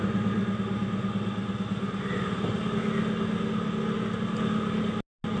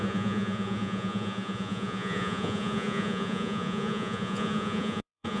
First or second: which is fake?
second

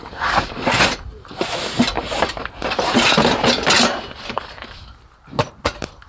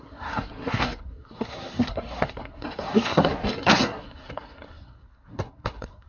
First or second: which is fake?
second